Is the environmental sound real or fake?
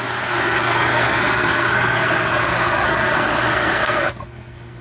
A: fake